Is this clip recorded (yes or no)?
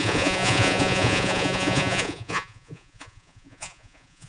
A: no